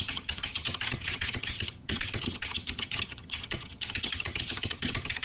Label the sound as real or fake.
fake